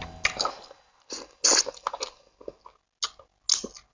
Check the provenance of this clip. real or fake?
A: real